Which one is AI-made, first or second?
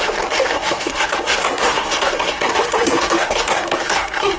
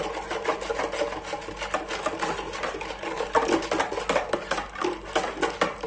first